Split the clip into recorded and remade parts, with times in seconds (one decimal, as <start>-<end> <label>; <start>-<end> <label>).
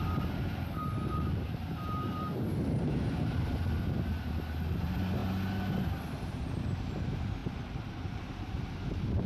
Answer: 0.0-5.2 remade; 5.2-5.8 recorded; 5.8-7.4 remade; 7.4-7.9 recorded; 7.9-9.3 remade